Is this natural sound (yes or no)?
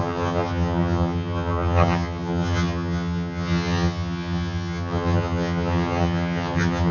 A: no